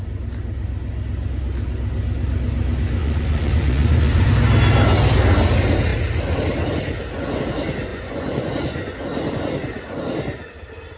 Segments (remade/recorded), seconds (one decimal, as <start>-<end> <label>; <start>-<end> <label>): 0.0-3.0 recorded; 3.0-4.3 remade; 4.3-7.9 recorded; 7.9-9.0 remade; 9.0-11.0 recorded